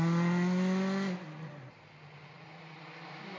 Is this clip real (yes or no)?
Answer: yes